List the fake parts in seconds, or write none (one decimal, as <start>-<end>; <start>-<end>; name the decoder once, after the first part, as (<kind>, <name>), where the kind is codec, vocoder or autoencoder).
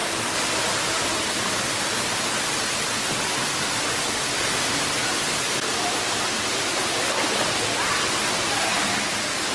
0.0-4.9 (vocoder, BigVGAN v2)